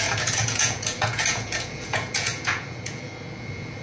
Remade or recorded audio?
remade